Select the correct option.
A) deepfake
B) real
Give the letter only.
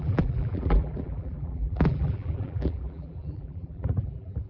A